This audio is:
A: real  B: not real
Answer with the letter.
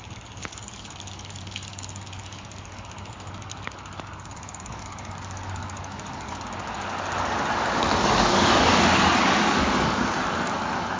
B